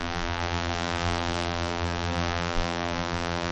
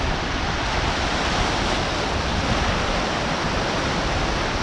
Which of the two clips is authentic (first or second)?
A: second